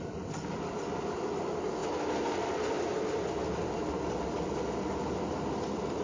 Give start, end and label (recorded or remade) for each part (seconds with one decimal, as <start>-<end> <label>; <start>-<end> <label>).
0.0-6.0 recorded